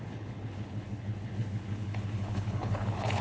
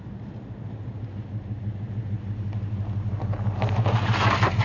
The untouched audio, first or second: second